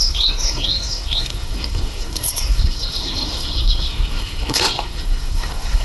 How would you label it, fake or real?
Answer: fake